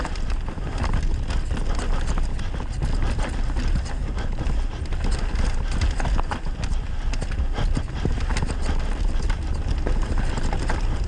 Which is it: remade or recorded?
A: recorded